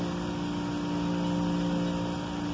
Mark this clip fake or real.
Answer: real